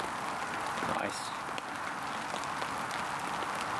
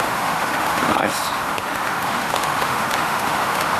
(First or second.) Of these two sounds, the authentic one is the first